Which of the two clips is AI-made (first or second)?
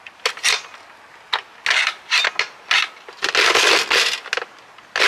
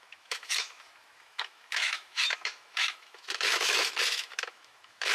second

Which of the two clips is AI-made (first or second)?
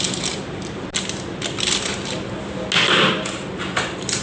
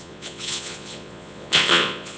second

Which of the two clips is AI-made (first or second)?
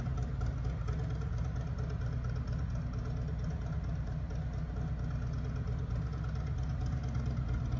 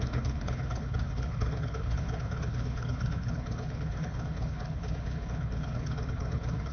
second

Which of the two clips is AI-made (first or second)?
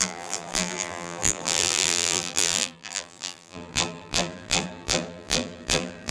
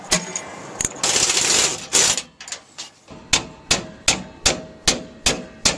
first